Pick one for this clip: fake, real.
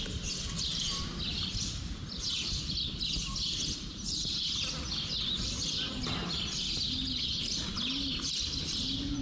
real